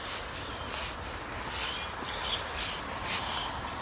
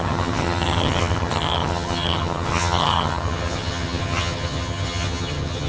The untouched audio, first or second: first